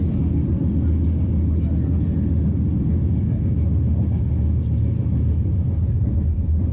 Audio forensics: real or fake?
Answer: real